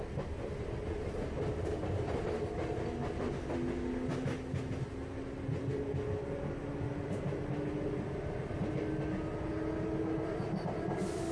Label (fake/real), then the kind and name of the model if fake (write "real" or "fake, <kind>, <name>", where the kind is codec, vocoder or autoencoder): real